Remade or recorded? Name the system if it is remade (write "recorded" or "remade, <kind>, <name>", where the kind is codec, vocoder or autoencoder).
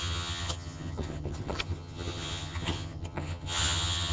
remade, vocoder, HiFi-GAN